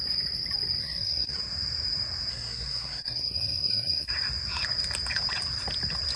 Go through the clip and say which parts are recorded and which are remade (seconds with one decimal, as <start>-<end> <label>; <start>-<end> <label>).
0.0-0.8 recorded; 0.8-1.4 remade; 1.4-2.3 recorded; 2.3-4.1 remade; 4.1-6.2 recorded